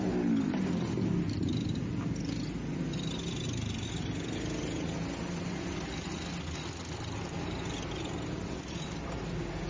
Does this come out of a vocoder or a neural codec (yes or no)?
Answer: no